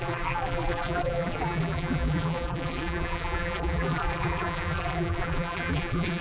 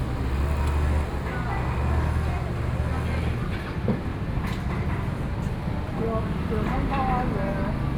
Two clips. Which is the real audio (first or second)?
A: second